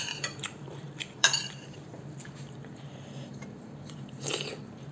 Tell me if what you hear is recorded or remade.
remade